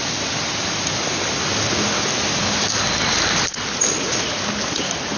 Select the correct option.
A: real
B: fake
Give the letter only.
A